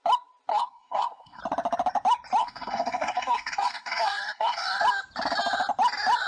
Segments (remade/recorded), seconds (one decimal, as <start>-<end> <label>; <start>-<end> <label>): 0.0-0.5 recorded; 0.5-1.4 remade; 1.4-2.4 recorded; 2.4-4.8 remade; 4.8-6.3 recorded